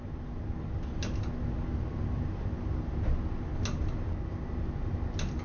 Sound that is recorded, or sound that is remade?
recorded